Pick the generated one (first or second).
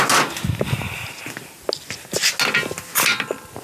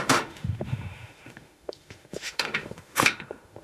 second